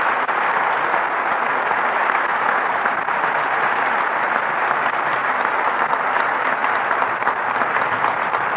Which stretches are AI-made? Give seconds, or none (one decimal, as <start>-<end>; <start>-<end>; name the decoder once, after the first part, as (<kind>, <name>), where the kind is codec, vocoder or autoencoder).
none